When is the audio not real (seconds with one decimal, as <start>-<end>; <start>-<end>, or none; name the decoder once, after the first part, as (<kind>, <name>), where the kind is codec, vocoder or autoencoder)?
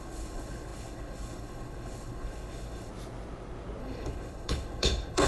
0.0-2.9 (codec, HILCodec); 3.8-5.3